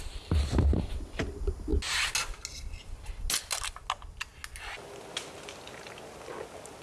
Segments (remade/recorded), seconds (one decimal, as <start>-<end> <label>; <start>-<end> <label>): 0.0-6.8 recorded